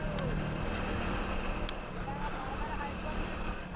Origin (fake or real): real